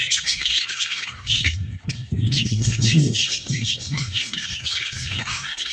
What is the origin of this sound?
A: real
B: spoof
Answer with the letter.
B